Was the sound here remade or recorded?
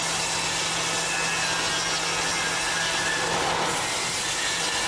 recorded